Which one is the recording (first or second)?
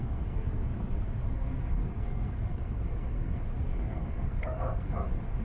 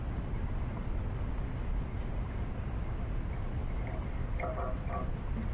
second